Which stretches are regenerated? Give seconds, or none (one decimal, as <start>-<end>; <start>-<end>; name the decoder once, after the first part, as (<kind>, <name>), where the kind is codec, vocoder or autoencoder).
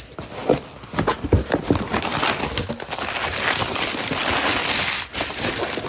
none